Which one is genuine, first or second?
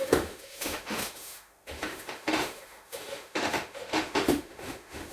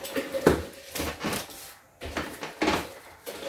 second